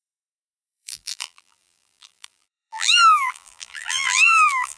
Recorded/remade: remade